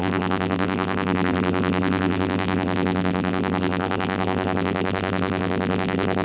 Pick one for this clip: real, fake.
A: fake